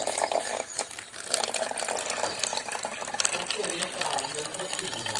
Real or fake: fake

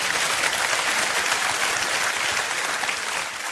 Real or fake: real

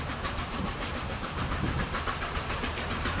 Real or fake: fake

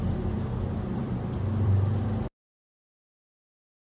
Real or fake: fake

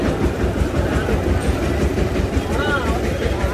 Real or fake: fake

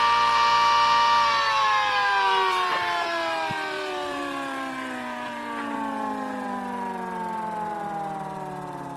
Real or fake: fake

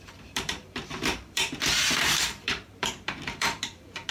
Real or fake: fake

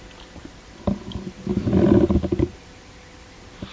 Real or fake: real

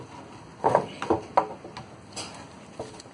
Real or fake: real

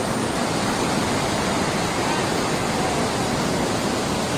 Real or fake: real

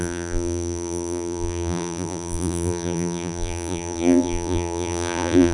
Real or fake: fake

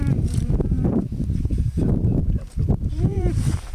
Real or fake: fake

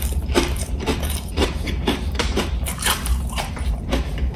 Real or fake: fake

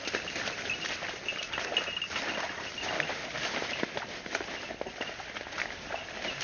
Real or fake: real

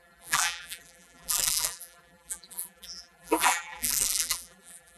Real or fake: fake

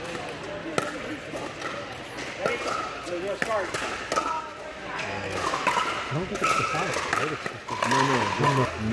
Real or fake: real